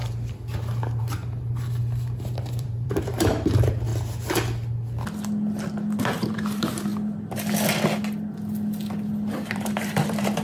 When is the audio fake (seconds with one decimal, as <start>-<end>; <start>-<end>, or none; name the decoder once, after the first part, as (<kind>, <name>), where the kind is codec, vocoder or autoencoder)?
1.0-3.9 (vocoder, BigVGAN v2); 6.0-6.9; 9.5-10.4